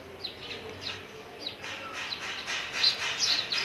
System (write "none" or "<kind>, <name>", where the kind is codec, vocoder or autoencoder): none